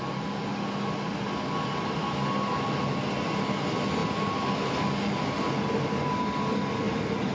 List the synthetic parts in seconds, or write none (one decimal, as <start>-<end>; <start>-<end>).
none